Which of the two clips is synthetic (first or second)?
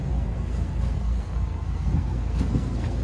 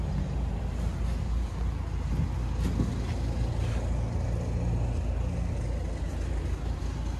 first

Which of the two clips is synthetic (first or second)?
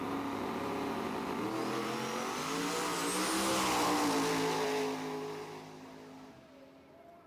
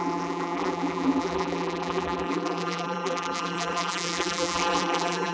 second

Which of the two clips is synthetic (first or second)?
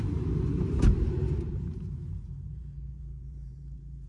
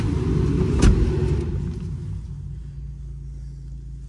first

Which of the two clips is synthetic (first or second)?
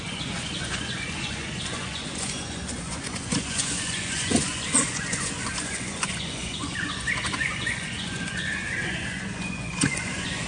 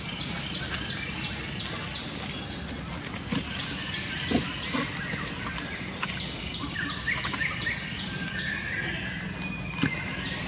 first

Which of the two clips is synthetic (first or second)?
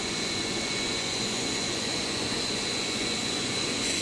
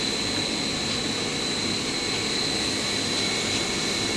first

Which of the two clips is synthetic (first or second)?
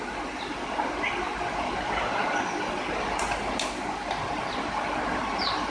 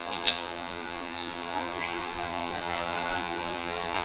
second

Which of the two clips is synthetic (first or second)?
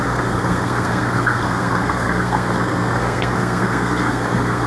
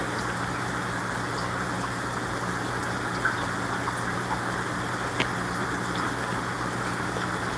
first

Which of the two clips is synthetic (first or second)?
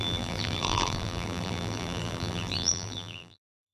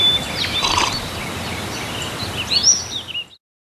first